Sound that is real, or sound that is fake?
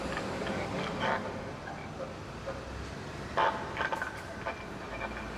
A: real